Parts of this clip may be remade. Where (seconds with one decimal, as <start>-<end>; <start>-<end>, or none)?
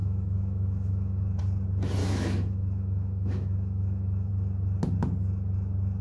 0.0-1.4; 2.0-4.3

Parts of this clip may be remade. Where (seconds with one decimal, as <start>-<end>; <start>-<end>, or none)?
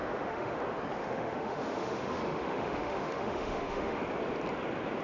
0.0-0.6; 1.0-4.0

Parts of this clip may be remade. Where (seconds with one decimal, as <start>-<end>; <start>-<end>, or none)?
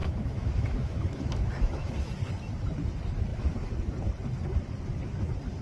0.0-2.1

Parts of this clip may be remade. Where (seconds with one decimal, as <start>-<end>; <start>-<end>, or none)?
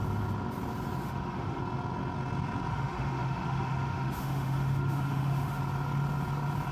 1.0-1.6; 2.7-5.6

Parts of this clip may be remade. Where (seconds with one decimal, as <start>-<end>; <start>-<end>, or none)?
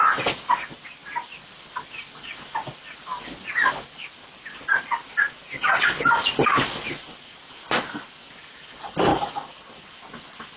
none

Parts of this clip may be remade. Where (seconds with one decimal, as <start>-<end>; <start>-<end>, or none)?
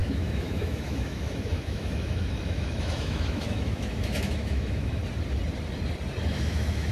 0.0-5.0; 6.2-6.9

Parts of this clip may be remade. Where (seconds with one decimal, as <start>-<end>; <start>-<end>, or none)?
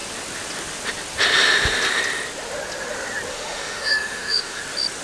3.3-4.6